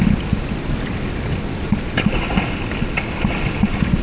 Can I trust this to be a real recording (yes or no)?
yes